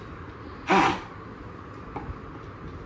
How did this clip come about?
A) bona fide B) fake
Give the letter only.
A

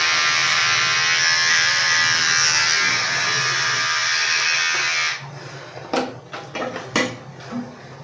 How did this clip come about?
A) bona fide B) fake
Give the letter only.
A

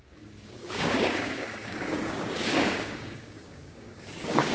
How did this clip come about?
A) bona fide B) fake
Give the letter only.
B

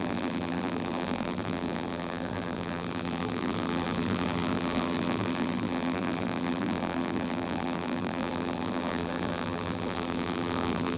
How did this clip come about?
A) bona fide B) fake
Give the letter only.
B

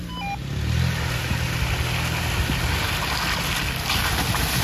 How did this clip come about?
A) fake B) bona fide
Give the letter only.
B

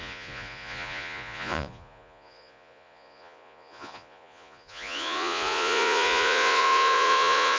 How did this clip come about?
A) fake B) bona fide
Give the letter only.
A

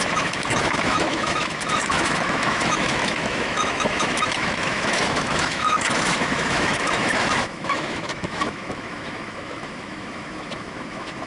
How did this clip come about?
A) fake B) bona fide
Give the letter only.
A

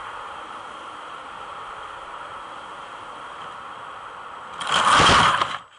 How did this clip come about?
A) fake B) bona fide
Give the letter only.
B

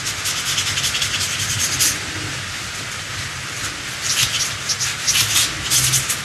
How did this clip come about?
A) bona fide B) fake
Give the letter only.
A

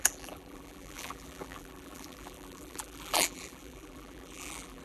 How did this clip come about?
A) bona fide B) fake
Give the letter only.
B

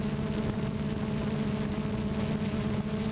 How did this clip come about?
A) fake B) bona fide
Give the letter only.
B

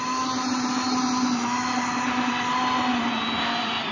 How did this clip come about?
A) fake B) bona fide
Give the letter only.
B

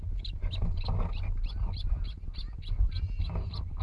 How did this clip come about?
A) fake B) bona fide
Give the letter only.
B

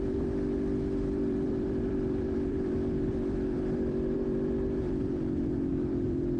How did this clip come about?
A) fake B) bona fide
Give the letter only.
A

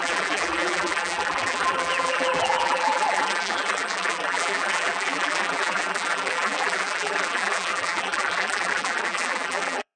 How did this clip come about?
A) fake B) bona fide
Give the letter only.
A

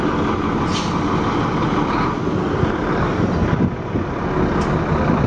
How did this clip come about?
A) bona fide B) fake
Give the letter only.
A